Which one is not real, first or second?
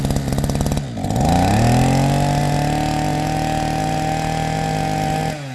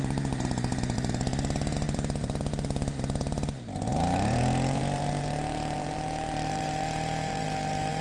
second